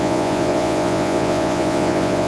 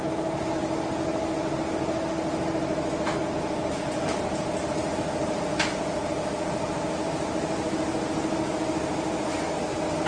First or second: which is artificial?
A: first